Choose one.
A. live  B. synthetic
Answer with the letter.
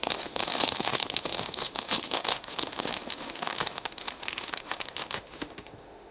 B